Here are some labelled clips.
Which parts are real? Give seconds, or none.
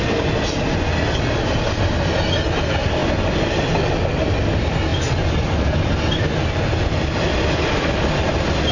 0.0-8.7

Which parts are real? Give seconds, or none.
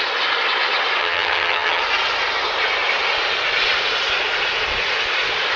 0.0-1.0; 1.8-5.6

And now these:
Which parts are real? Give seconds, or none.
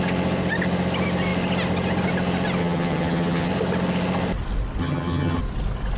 0.0-2.6; 3.5-4.8; 5.4-6.0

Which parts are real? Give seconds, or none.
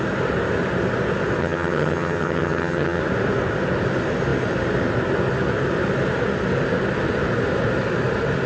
0.0-1.4; 3.0-8.5